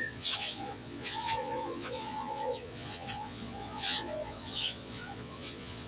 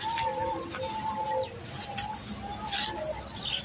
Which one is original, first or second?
second